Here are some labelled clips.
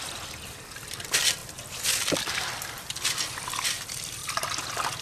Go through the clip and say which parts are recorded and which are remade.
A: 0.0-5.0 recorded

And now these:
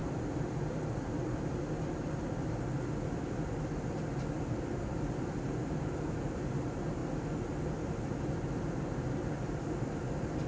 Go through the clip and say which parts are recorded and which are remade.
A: 0.0-10.5 recorded

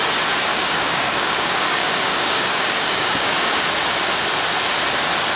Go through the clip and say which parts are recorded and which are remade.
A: 0.0-0.5 recorded; 0.5-3.7 remade; 3.7-5.4 recorded

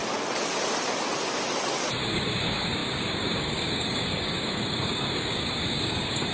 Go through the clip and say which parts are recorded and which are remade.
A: 0.0-2.1 recorded; 2.1-6.3 remade

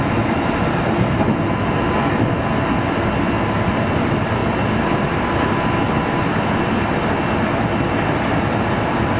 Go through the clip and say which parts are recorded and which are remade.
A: 0.0-9.2 recorded

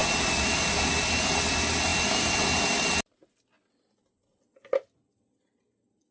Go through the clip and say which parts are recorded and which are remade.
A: 0.0-6.1 recorded